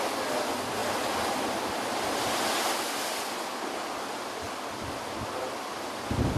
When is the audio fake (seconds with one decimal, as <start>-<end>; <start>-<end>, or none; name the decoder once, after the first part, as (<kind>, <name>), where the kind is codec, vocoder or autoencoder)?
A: none